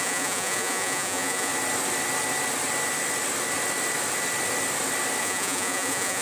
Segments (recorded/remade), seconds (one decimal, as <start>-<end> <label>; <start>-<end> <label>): 0.0-1.5 remade; 1.5-5.2 recorded; 5.2-6.2 remade

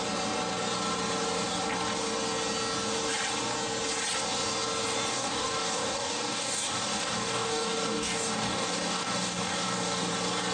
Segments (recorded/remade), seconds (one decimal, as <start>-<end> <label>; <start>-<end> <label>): 0.0-5.1 recorded; 5.1-10.1 remade; 10.1-10.5 recorded